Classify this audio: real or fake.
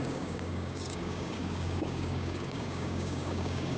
fake